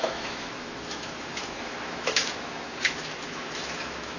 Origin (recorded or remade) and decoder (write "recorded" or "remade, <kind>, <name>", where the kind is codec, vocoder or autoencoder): remade, autoencoder, DAC-VAE